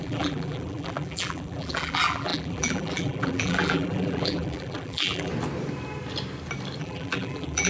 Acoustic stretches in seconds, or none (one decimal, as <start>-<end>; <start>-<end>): 5.3-6.8